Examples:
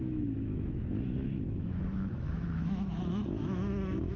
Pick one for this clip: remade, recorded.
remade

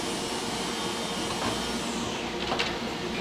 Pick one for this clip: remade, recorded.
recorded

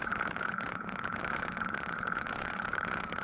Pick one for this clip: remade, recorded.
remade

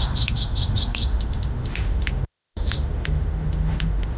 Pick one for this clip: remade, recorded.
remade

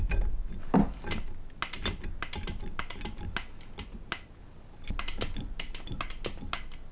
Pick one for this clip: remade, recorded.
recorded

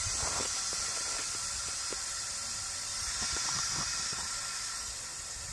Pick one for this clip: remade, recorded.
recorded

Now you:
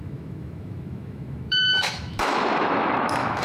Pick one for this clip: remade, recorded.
remade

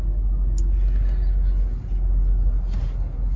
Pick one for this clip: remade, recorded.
recorded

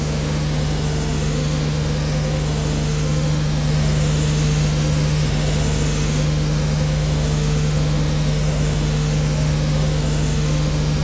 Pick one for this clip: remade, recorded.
remade